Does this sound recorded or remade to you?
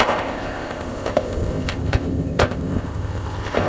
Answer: remade